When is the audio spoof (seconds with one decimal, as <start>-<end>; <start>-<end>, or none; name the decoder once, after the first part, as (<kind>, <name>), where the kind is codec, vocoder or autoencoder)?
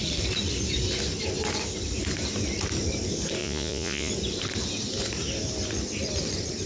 3.4-4.1 (vocoder, Vocos)